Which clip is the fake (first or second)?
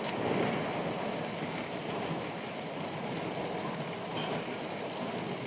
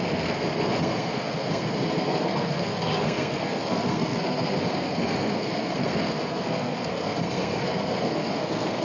second